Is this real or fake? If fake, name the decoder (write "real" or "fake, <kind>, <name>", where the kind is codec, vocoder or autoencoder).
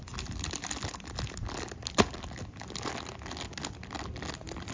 real